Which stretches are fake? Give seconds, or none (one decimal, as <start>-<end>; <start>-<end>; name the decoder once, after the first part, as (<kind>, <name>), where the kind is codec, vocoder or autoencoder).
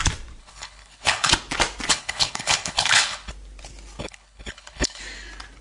0.4-1.3 (codec, HILCodec); 1.9-3.3; 4.0-5.0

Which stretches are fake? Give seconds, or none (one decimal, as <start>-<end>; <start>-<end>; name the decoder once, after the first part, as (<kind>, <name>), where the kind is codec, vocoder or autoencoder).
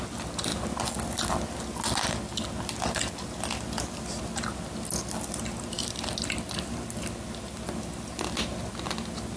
none